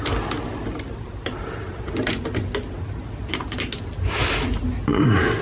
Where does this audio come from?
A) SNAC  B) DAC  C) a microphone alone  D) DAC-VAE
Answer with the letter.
C